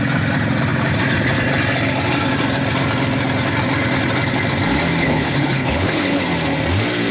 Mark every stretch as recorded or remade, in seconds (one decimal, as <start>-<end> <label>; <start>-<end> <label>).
0.0-5.0 recorded; 5.0-6.2 remade; 6.2-7.1 recorded